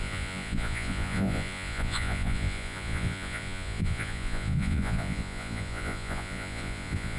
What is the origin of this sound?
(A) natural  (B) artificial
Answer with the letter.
B